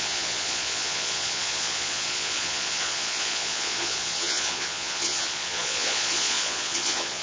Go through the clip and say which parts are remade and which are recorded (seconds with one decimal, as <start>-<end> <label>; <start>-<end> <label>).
0.0-7.2 remade